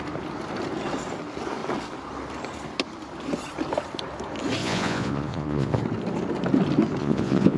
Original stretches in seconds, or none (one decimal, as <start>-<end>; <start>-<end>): 0.0-4.6; 5.8-7.0